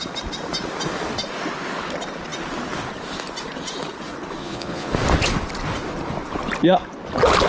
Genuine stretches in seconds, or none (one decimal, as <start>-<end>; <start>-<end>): 0.0-4.4; 4.9-7.5